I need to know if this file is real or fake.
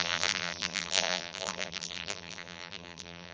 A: fake